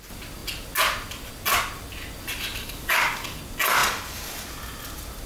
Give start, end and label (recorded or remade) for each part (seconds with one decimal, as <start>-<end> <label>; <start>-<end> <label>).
0.0-2.5 recorded; 2.5-3.4 remade; 3.4-5.3 recorded